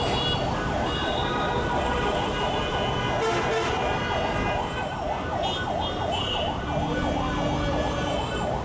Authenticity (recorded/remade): recorded